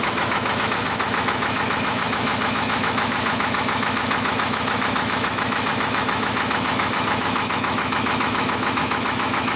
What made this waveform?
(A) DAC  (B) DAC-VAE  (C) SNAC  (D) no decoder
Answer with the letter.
B